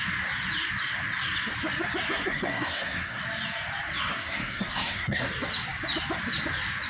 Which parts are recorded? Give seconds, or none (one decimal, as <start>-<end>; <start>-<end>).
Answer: 0.0-2.1; 3.2-4.1; 5.2-6.9